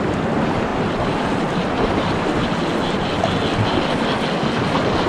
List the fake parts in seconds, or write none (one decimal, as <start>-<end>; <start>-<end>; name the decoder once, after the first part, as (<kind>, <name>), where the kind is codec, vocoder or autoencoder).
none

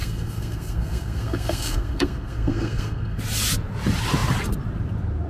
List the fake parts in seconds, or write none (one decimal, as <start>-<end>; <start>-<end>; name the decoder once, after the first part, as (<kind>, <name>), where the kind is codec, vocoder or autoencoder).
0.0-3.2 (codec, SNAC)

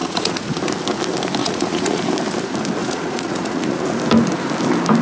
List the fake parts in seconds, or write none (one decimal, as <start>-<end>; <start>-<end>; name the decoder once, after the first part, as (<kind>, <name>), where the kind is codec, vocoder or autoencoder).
0.0-0.6 (vocoder, Vocos); 1.4-2.0; 2.8-3.8

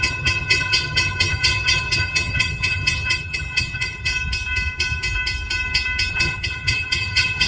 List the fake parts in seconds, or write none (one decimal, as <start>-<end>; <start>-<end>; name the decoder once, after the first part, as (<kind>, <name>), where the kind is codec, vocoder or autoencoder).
0.0-4.1 (vocoder, HiFi-GAN); 6.1-7.5

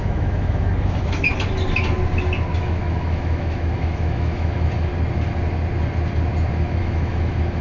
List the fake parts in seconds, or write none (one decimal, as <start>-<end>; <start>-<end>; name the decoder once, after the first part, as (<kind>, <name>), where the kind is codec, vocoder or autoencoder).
0.0-1.3 (autoencoder, DAC-VAE); 2.6-4.9; 6.8-7.6

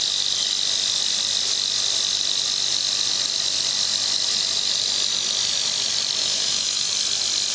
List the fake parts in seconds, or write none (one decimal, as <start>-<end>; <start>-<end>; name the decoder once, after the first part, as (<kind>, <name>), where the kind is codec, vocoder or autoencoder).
6.2-6.9 (autoencoder, DAC-VAE)

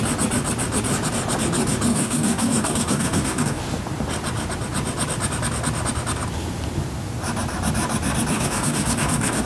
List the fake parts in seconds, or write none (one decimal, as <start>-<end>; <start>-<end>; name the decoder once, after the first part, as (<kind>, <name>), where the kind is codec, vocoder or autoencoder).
1.9-3.6 (codec, DAC); 8.3-9.5

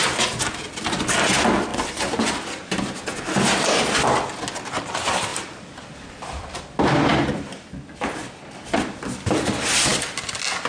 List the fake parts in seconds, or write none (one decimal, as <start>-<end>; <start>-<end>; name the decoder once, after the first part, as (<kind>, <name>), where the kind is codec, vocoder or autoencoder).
5.3-6.6 (vocoder, BigVGAN v2); 7.1-9.5